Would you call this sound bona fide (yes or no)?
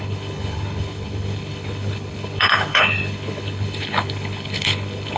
no